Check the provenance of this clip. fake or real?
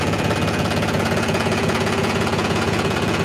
fake